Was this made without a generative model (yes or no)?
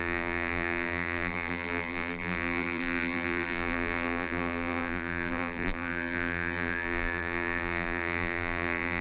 no